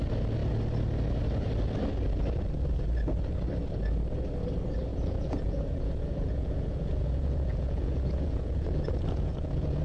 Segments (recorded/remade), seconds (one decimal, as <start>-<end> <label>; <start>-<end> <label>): 0.0-4.9 recorded; 4.9-9.8 remade

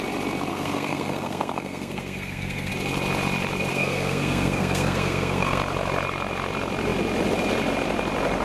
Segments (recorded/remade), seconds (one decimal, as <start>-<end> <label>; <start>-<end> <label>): 0.0-0.5 recorded; 0.5-2.7 remade; 2.7-3.7 recorded; 3.7-5.6 remade; 5.6-8.4 recorded

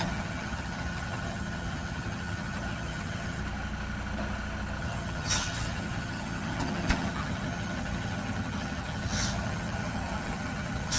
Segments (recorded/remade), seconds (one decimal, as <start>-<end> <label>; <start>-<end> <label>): 0.0-3.4 remade; 3.4-4.8 recorded; 4.8-11.0 remade

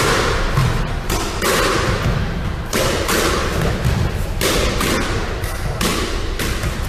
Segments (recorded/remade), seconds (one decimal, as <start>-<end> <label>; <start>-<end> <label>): 0.0-6.9 recorded

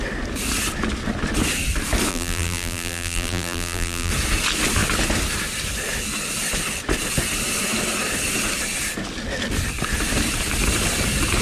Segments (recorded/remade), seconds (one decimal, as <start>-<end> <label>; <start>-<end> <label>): 0.0-2.1 recorded; 2.1-4.1 remade; 4.1-11.4 recorded

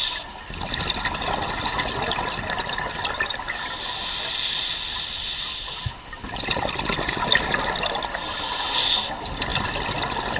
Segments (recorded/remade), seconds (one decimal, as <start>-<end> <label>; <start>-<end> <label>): 0.0-10.4 recorded

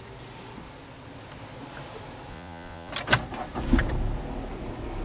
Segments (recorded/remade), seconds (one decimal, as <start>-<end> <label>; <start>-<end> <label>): 0.0-2.3 recorded; 2.3-2.9 remade; 2.9-5.0 recorded

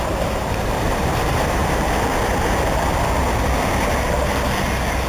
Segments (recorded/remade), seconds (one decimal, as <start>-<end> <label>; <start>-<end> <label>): 0.0-1.6 remade; 1.6-5.1 recorded